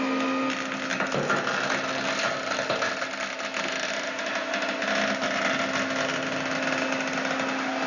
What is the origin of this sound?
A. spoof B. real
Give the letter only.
B